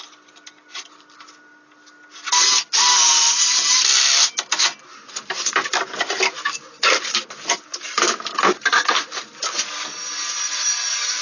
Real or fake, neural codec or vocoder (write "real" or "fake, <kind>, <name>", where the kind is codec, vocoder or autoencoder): real